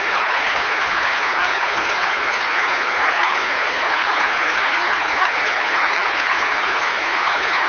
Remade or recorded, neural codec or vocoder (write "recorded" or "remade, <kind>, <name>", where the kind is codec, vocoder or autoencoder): remade, codec, HILCodec